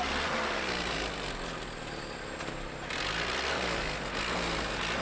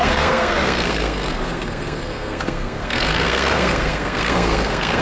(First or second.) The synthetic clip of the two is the second